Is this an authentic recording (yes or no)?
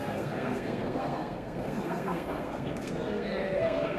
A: no